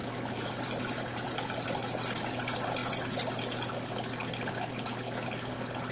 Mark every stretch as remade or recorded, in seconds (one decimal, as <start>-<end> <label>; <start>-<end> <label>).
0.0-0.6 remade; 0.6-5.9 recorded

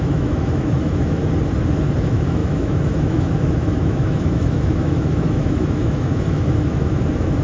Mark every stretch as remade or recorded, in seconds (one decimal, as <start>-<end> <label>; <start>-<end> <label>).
0.0-1.2 remade; 1.2-2.0 recorded; 2.0-7.4 remade

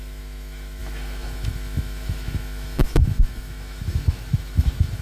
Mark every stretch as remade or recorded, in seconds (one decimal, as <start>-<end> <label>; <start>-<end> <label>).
0.0-5.0 remade